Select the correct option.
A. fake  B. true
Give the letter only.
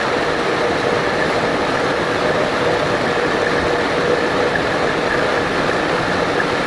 B